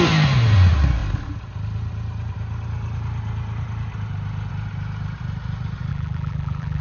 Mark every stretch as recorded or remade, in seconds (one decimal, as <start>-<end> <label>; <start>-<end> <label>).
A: 0.0-5.9 recorded; 5.9-6.8 remade